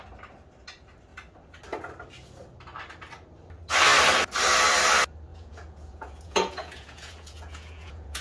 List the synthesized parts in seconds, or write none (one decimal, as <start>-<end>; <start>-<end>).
5.3-8.2